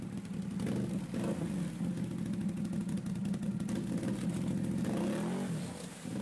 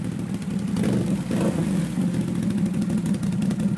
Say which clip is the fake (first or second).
second